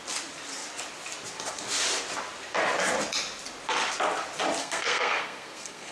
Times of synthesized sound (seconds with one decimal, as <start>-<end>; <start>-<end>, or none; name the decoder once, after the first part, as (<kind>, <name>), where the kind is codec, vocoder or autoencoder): 4.6-5.9 (codec, SNAC)